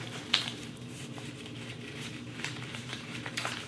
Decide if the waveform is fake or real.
fake